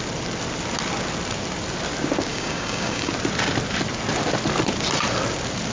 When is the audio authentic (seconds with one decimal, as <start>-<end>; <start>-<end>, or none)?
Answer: 0.0-2.3; 3.1-5.7